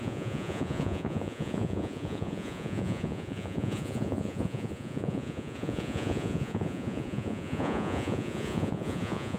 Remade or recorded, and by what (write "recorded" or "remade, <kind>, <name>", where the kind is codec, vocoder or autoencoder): remade, vocoder, Vocos